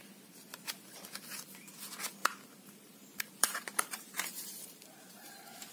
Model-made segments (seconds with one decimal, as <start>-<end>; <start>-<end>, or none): 2.2-5.7